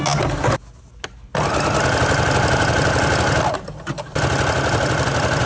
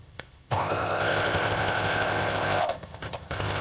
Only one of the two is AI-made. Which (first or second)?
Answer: second